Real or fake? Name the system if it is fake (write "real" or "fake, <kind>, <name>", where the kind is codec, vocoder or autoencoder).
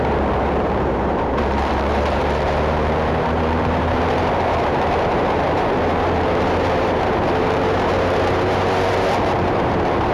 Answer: fake, vocoder, BigVGAN v2